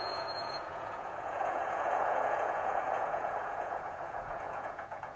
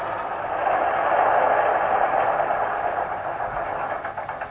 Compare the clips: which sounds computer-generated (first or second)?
first